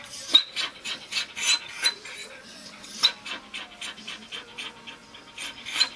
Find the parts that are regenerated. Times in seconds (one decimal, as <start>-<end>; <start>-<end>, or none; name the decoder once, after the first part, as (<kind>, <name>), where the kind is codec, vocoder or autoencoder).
0.7-1.3 (vocoder, WaveNeXt); 2.2-2.9